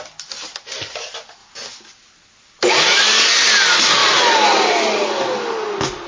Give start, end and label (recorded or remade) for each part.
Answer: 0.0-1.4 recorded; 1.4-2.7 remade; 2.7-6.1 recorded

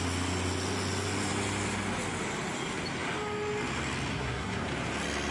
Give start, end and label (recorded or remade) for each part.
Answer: 0.0-4.1 recorded; 4.1-4.6 remade; 4.6-5.3 recorded